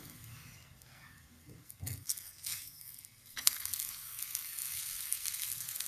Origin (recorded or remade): remade